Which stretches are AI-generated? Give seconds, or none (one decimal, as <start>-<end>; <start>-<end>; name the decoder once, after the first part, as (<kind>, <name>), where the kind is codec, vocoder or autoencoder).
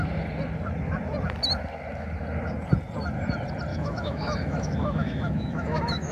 3.7-6.1 (autoencoder, DAC-VAE)